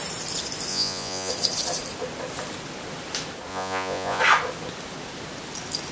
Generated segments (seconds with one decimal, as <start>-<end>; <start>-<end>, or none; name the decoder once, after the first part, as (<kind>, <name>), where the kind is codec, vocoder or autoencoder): 0.7-1.3 (vocoder, Vocos); 3.5-4.2